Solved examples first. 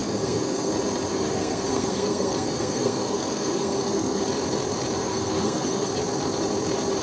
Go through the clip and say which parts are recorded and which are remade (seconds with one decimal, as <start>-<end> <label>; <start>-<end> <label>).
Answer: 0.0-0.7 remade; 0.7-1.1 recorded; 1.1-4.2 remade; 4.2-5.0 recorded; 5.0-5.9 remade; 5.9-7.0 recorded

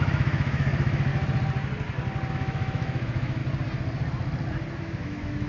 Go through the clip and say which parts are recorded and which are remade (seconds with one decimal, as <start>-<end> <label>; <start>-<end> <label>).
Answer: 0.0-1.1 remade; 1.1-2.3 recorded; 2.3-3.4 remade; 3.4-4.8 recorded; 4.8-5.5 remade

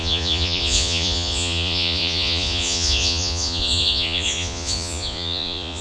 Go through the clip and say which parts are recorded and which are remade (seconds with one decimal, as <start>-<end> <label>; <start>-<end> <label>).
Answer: 0.0-5.8 remade

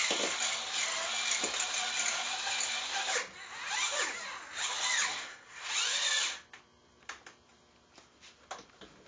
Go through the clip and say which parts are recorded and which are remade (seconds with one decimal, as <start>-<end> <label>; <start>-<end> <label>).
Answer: 0.0-5.1 recorded; 5.1-5.7 remade; 5.7-9.1 recorded

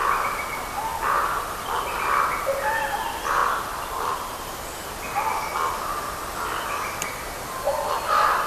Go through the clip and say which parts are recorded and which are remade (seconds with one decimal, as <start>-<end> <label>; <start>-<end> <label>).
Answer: 0.0-8.5 recorded

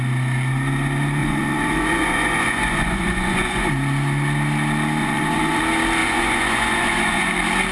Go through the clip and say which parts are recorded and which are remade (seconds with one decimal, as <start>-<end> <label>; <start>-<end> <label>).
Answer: 0.0-1.2 recorded; 1.2-3.7 remade; 3.7-5.0 recorded; 5.0-5.6 remade; 5.6-6.0 recorded; 6.0-7.3 remade; 7.3-7.7 recorded

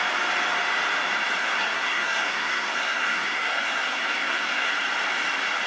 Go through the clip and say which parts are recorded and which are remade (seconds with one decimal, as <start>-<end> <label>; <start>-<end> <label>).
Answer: 0.0-1.4 recorded; 1.4-4.7 remade; 4.7-5.7 recorded

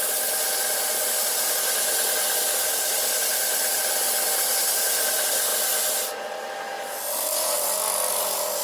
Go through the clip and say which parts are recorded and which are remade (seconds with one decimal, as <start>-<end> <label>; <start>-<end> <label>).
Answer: 0.0-8.6 recorded